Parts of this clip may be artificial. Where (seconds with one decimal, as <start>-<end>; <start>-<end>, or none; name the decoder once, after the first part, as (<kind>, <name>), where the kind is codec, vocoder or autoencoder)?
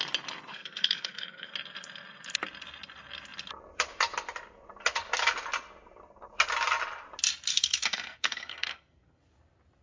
0.5-1.5 (codec, SNAC); 7.5-9.2